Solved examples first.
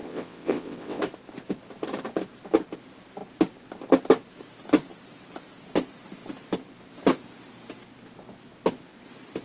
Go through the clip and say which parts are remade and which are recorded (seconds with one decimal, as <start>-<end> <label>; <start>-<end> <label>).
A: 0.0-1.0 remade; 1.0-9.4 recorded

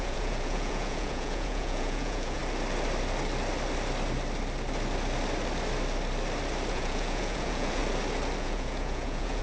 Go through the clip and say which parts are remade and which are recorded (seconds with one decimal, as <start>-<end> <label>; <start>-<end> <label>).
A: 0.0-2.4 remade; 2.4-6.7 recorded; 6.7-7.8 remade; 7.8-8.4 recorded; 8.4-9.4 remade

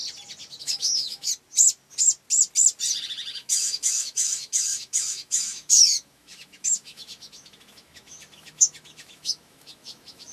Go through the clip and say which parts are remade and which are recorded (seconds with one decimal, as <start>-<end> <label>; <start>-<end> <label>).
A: 0.0-0.6 recorded; 0.6-1.3 remade; 1.3-3.3 recorded; 3.3-10.3 remade

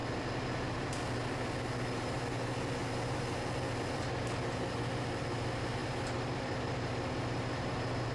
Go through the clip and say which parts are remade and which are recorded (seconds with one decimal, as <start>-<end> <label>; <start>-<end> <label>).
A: 0.0-8.1 recorded

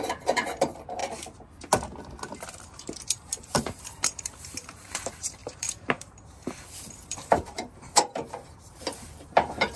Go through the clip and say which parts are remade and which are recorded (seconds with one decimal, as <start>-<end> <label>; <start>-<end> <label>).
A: 0.0-1.0 remade; 1.0-2.6 recorded; 2.6-9.8 remade